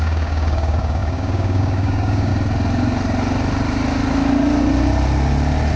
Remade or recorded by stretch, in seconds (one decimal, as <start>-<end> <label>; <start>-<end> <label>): 0.0-2.3 remade; 2.3-5.8 recorded